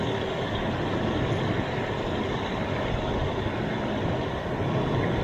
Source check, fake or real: real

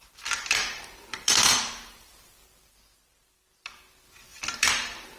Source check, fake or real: fake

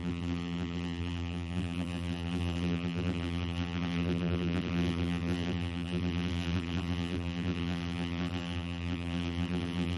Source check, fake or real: fake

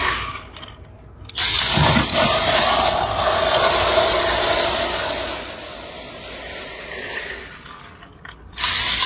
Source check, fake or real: real